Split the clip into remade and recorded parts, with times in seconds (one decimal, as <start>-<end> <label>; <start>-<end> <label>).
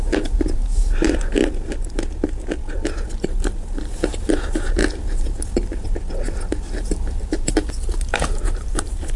0.0-1.4 remade; 1.4-4.1 recorded; 4.1-4.8 remade; 4.8-6.7 recorded; 6.7-9.2 remade